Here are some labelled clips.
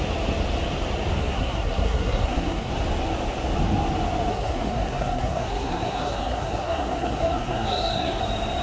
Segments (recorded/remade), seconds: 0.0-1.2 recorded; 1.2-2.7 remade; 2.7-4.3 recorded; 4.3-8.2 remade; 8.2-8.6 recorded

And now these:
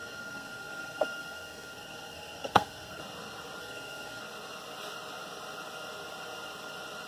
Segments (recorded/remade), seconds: 0.0-3.0 remade; 3.0-3.6 recorded; 3.6-4.2 remade; 4.2-7.1 recorded

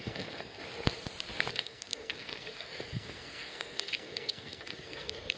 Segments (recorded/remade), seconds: 0.0-0.6 remade; 0.6-1.5 recorded; 1.5-5.4 remade

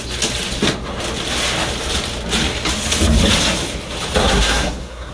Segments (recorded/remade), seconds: 0.0-4.2 recorded; 4.2-5.1 remade

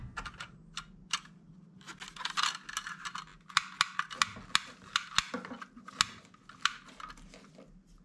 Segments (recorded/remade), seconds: 0.0-8.0 recorded

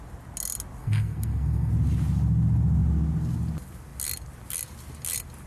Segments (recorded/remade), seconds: 0.0-0.8 recorded; 0.8-1.7 remade; 1.7-5.5 recorded

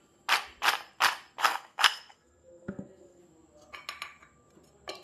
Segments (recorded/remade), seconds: 0.0-1.4 recorded; 1.4-3.2 remade; 3.2-5.0 recorded

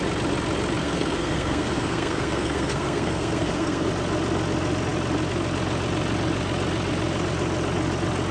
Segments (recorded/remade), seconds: 0.0-0.8 recorded; 0.8-3.9 remade; 3.9-8.3 recorded